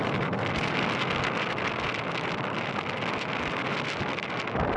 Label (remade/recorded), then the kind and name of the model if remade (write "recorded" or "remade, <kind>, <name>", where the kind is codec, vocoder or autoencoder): recorded